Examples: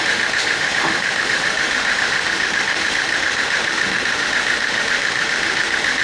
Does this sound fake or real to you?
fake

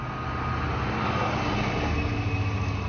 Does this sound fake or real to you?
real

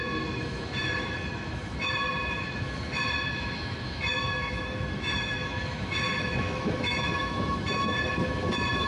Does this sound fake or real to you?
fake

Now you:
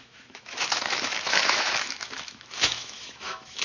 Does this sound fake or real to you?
fake